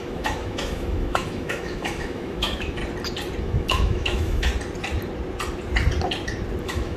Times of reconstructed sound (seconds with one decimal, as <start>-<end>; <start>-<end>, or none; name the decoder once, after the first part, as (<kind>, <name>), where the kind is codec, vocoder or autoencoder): 0.0-2.8 (autoencoder, DAC-VAE); 3.4-4.5; 6.6-7.0